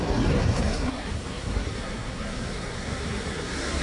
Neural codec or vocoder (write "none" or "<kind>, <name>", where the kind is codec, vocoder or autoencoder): codec, SNAC